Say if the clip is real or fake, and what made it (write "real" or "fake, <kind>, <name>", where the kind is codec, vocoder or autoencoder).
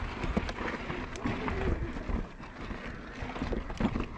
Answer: real